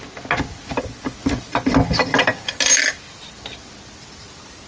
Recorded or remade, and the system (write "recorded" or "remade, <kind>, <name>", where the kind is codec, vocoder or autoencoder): recorded